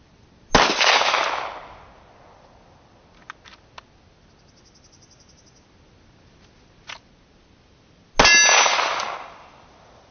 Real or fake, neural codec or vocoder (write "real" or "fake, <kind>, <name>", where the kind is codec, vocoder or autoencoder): real